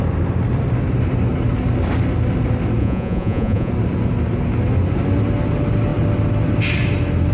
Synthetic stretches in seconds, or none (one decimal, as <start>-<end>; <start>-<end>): 2.8-3.7